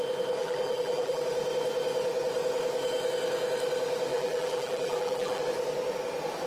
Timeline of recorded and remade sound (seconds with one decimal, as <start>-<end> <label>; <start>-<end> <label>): 0.0-0.4 recorded; 0.4-1.2 remade; 1.2-4.1 recorded; 4.1-5.4 remade; 5.4-6.5 recorded